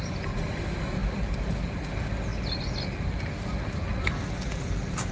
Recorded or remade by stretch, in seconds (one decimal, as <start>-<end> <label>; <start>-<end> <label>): 0.0-5.1 recorded